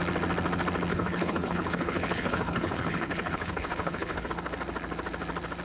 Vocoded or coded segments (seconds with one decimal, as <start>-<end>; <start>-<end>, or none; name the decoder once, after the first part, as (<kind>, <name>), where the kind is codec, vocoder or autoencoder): 0.9-4.3 (codec, HILCodec)